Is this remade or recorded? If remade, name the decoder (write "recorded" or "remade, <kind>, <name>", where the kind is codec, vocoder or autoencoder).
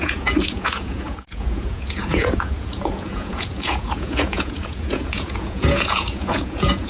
remade, vocoder, Vocos